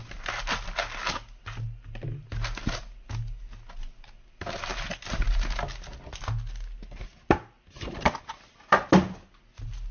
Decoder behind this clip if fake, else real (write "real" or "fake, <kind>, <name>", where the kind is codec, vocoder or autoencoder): real